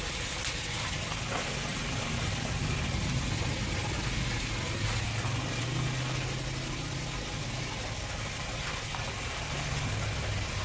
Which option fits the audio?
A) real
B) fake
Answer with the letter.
A